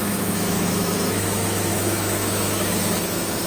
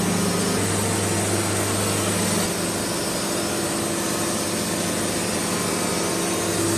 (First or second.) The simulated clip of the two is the first